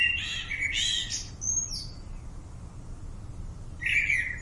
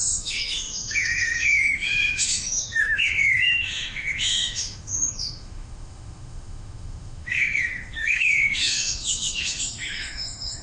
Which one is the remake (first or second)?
second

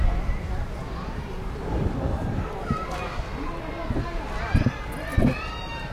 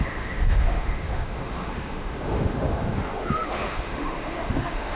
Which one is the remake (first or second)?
second